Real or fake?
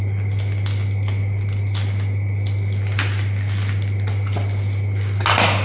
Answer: real